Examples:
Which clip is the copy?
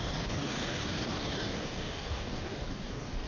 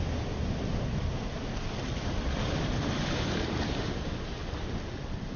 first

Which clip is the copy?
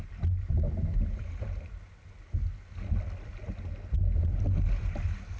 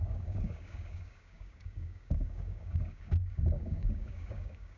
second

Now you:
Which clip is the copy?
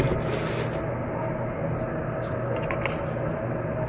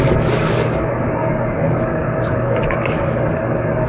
second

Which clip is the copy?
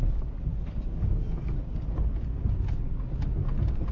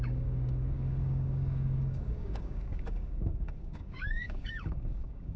second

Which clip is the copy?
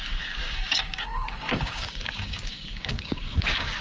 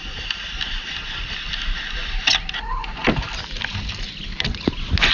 first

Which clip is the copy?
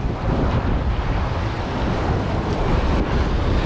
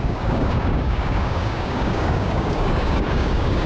second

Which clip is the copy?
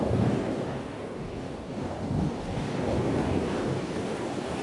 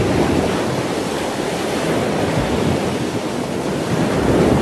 first